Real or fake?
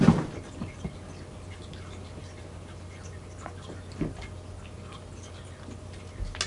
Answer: real